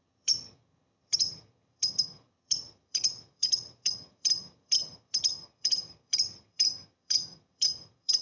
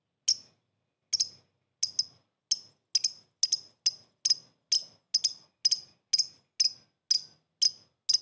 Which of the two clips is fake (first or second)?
first